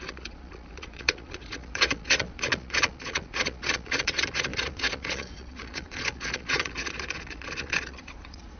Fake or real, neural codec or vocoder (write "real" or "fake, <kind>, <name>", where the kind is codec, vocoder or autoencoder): fake, vocoder, Vocos